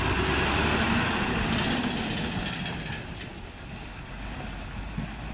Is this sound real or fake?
real